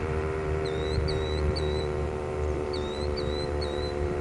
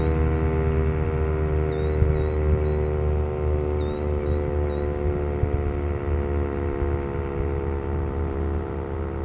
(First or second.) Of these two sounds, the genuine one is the second